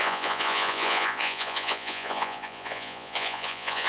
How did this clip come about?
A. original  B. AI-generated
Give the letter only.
B